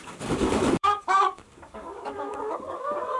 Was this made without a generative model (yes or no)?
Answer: no